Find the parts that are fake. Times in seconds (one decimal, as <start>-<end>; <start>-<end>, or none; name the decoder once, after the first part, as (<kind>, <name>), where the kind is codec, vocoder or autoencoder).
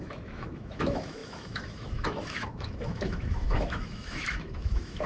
0.0-5.1 (autoencoder, DAC-VAE)